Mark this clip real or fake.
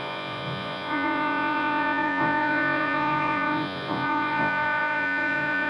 fake